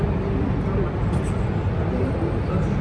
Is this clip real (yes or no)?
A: yes